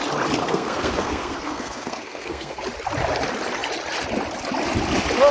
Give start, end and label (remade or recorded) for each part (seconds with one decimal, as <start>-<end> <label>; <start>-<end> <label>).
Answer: 0.0-0.4 recorded; 0.4-2.6 remade; 2.6-5.3 recorded